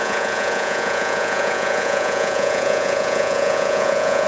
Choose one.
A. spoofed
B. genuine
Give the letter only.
A